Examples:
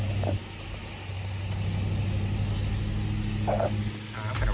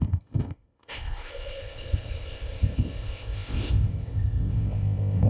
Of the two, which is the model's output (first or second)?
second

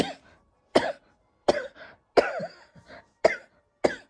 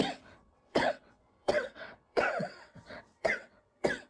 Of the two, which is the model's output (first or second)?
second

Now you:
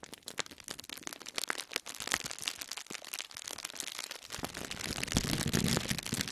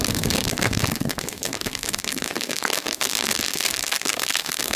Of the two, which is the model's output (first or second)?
second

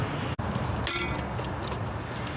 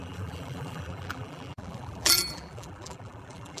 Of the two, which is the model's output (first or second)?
second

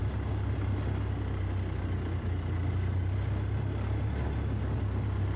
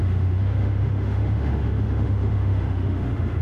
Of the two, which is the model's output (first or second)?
second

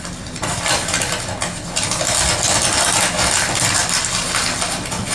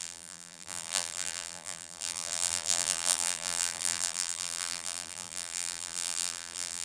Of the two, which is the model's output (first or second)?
second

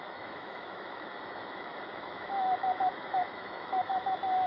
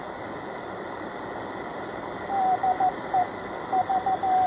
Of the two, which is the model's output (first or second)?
first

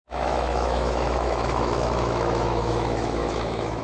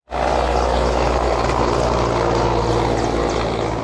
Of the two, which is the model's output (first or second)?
first